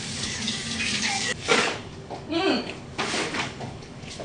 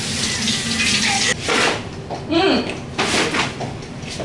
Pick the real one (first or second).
second